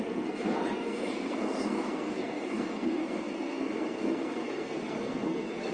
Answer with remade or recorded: remade